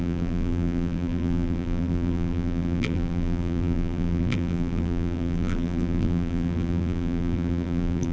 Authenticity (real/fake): fake